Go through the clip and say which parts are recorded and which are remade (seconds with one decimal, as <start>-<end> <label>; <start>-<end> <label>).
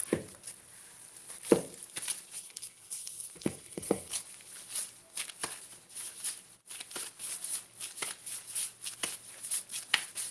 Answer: 0.0-2.4 recorded; 2.4-4.1 remade; 4.1-10.3 recorded